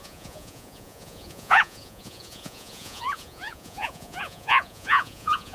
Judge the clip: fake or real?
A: fake